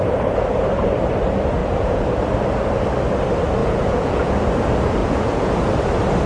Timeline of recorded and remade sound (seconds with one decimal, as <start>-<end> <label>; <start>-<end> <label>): 0.0-1.6 recorded; 1.6-2.2 remade; 2.2-3.6 recorded; 3.6-4.3 remade; 4.3-5.0 recorded; 5.0-5.5 remade; 5.5-6.3 recorded